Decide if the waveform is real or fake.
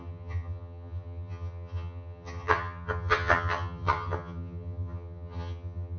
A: fake